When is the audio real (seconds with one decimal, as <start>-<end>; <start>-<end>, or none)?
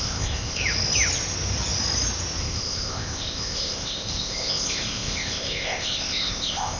0.6-2.4